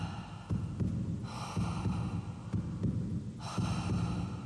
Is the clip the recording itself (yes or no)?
yes